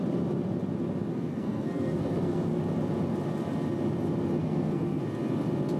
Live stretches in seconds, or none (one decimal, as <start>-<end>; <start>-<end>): 0.0-1.1; 2.6-4.4; 5.0-5.8